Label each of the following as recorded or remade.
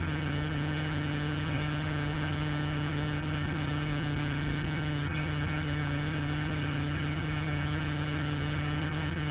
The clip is remade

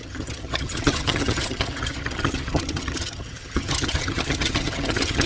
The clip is remade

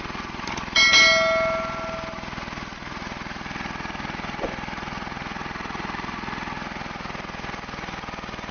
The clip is recorded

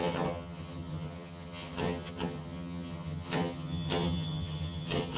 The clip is remade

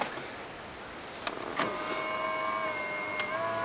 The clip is recorded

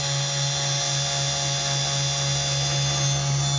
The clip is recorded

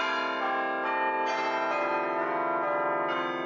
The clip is recorded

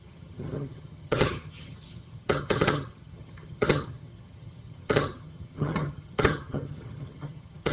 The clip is remade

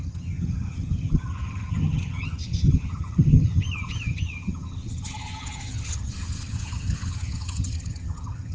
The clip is remade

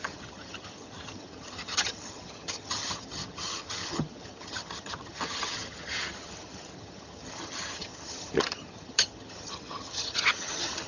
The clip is remade